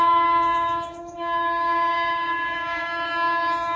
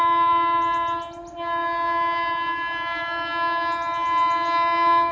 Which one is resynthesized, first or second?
first